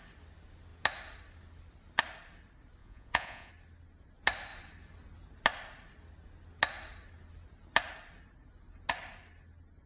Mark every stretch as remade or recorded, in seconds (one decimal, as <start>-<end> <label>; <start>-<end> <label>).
0.0-2.8 recorded; 2.8-3.5 remade; 3.5-9.9 recorded